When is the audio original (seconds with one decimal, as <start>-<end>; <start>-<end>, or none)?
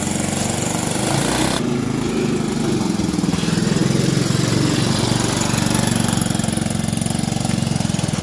0.0-8.2